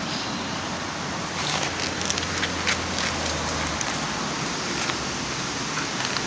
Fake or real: real